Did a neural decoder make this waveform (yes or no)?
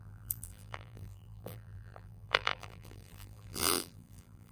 yes